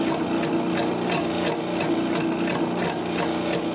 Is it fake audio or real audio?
real